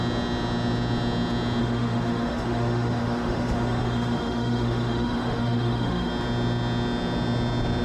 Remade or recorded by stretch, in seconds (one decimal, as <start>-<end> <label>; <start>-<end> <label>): 0.0-1.6 recorded; 1.6-6.1 remade; 6.1-7.8 recorded